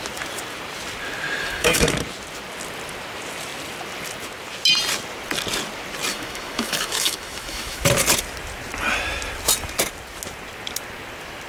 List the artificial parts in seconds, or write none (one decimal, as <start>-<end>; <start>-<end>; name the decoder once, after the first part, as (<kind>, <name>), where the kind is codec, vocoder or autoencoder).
1.4-1.9 (autoencoder, DAC-VAE); 6.1-7.8